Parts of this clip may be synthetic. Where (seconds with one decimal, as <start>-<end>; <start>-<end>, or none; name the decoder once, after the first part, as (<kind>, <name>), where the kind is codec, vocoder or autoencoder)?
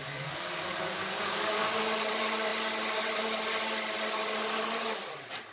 0.0-1.6 (codec, DAC)